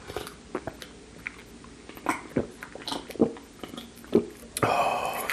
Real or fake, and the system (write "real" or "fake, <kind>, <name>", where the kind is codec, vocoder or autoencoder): real